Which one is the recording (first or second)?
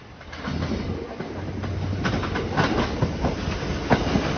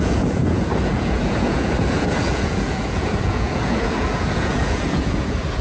first